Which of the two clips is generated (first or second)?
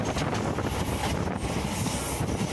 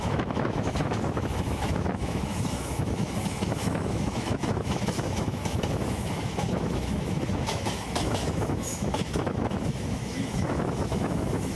second